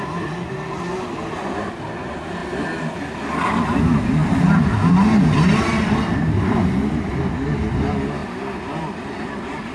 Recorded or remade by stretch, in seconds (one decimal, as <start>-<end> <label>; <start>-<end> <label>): 0.0-9.7 recorded